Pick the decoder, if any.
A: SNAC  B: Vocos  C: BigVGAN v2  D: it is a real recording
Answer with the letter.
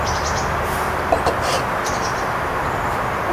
D